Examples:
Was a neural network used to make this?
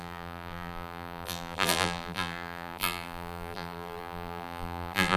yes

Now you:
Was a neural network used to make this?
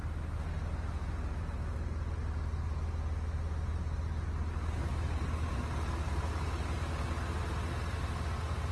no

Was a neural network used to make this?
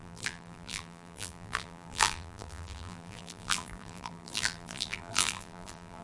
yes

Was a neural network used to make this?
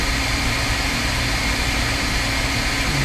no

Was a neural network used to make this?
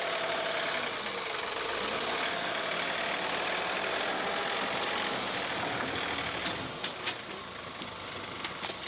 no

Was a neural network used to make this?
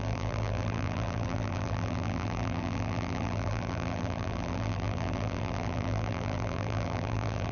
yes